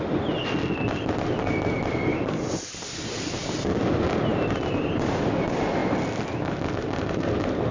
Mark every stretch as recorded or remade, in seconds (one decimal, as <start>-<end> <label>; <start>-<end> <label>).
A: 0.0-2.1 recorded; 2.1-3.7 remade; 3.7-4.3 recorded; 4.3-5.3 remade; 5.3-7.7 recorded